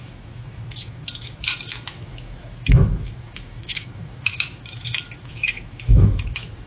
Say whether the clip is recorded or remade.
remade